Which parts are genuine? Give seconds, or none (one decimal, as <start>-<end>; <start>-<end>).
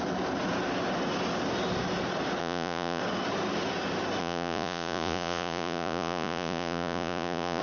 0.0-2.4; 3.0-4.2